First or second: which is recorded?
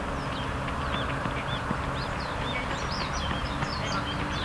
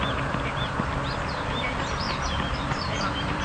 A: first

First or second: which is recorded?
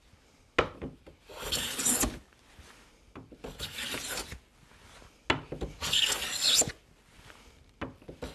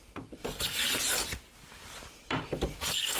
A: first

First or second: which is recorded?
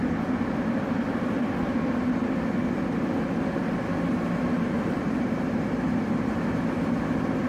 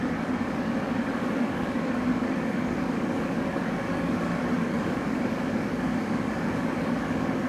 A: first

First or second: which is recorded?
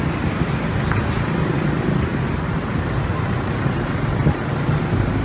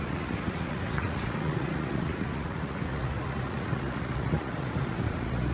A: first